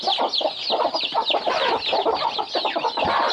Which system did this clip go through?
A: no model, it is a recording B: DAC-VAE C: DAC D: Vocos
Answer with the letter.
A